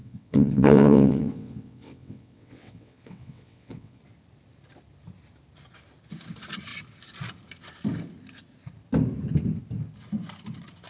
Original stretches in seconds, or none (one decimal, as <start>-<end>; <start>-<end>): 4.0-10.9